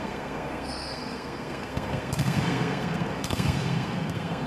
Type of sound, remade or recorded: remade